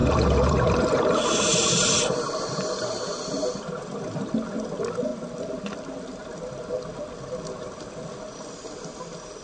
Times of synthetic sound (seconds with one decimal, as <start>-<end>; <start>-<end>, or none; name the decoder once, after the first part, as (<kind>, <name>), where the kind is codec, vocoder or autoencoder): 0.0-4.3 (vocoder, BigVGAN v2)